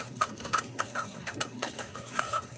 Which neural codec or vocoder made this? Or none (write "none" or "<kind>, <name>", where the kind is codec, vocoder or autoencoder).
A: codec, SNAC